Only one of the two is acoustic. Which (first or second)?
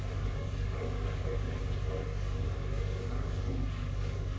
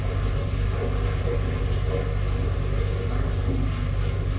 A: second